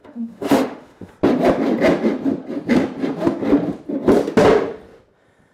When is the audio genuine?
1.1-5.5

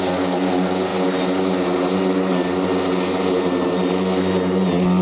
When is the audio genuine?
0.0-5.0

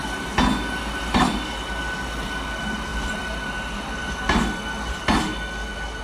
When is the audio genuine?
0.0-2.9; 4.1-6.0

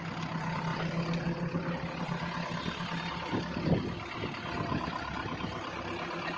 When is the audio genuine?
0.0-6.4

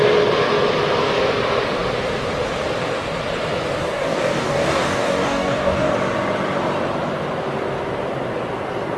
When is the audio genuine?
0.0-3.8; 5.9-9.0

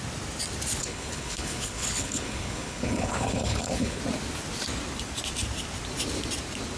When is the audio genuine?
0.0-0.8; 4.0-6.8

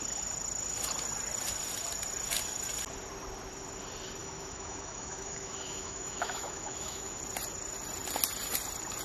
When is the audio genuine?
0.0-4.2; 7.2-9.0

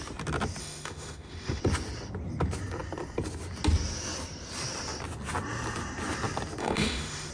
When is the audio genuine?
0.0-0.6; 1.6-6.6